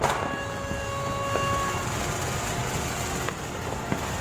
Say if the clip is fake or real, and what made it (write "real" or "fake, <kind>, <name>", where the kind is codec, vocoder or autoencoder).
real